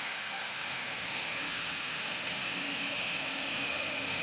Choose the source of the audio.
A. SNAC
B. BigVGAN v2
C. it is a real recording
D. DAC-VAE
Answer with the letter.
D